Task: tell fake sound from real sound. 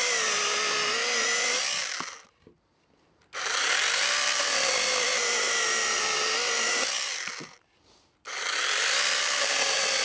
real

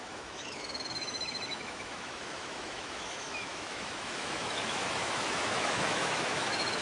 fake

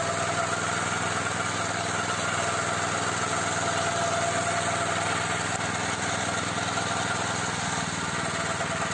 real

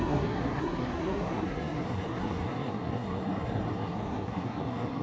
fake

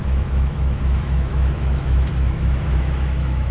fake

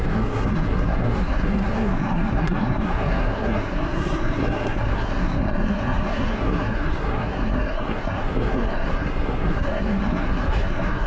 fake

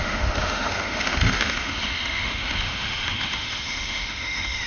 fake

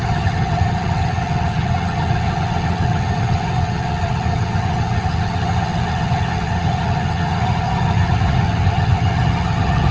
fake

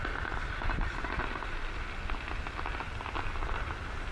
real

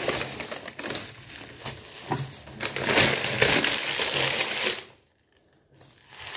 real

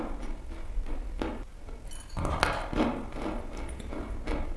real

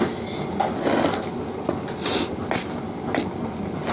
real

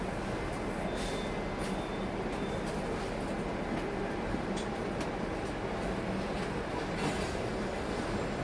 real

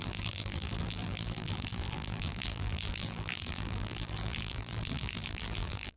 fake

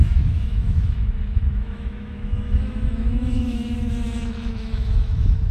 fake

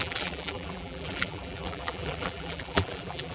fake